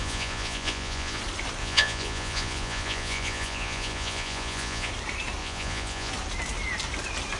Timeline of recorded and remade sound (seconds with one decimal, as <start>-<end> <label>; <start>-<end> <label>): 0.0-1.2 remade; 1.2-1.6 recorded; 1.6-4.9 remade; 4.9-5.4 recorded; 5.4-6.1 remade; 6.1-7.4 recorded